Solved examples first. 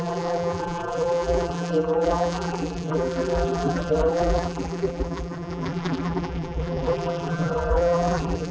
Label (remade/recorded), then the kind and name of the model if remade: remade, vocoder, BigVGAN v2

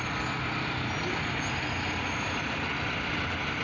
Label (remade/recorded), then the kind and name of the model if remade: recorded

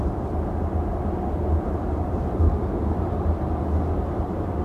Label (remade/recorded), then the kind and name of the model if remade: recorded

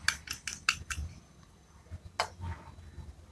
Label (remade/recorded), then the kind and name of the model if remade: recorded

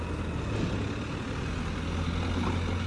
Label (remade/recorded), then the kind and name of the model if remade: recorded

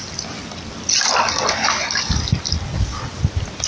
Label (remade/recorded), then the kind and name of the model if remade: recorded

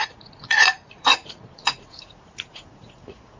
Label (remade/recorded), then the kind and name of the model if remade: remade, vocoder, Vocos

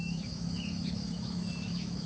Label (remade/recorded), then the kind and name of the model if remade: remade, autoencoder, DAC-VAE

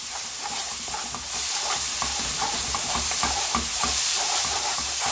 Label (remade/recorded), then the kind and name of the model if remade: remade, vocoder, BigVGAN v2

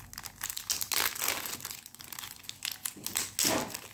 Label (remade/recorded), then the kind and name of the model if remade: recorded